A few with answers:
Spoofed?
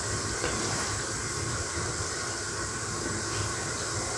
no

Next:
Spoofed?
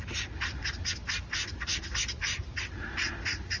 no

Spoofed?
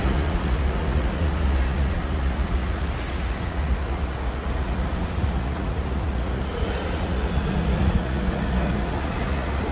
yes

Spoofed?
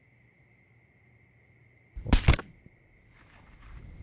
no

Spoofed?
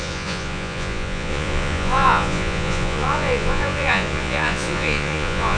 yes